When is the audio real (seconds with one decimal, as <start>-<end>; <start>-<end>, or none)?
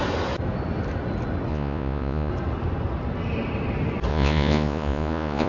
0.0-1.5; 2.3-4.1